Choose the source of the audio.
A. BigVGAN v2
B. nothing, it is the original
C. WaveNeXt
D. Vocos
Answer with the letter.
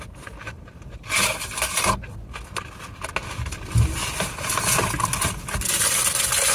B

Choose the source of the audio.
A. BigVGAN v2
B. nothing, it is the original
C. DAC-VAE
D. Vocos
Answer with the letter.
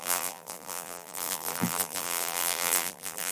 A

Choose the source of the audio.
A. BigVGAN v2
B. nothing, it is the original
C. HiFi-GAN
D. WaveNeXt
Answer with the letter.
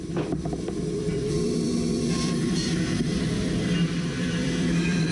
A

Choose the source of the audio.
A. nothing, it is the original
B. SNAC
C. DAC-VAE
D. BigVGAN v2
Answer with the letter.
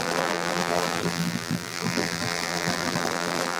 D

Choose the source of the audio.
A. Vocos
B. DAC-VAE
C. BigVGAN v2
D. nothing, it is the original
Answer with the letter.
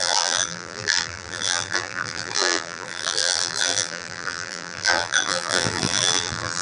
C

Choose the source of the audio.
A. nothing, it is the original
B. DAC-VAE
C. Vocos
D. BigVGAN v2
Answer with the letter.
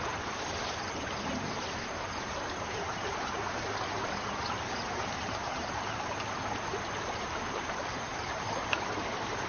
D